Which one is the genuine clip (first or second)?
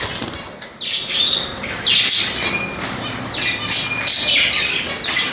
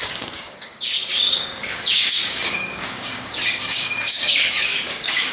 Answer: first